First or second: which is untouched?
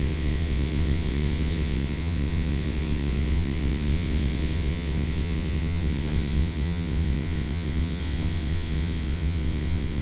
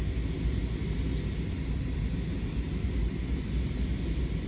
second